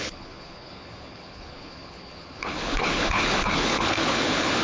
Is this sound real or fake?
fake